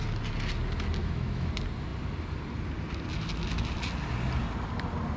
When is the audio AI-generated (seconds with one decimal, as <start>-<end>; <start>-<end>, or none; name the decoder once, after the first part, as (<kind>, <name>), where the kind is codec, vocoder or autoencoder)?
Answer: 1.0-1.5 (autoencoder, DAC-VAE)